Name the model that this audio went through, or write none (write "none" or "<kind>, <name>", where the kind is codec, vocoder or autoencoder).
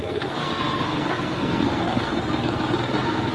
codec, SNAC